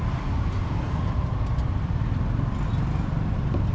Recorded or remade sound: recorded